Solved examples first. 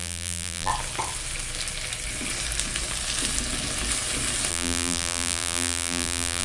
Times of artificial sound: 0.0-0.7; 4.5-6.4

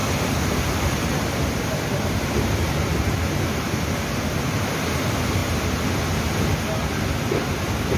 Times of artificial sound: none

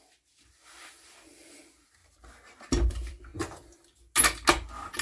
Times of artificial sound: 0.0-2.0; 2.9-3.3

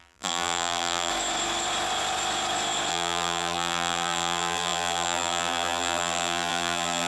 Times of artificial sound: 0.0-1.1; 2.9-7.1

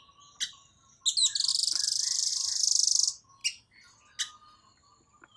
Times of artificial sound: 1.5-2.3

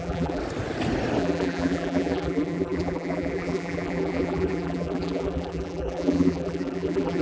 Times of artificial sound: 0.0-0.4; 1.2-7.2